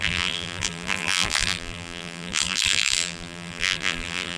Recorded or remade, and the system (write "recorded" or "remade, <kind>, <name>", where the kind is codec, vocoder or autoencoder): remade, vocoder, BigVGAN v2